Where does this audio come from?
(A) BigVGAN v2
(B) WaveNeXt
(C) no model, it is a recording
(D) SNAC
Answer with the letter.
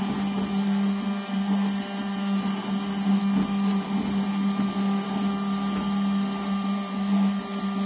C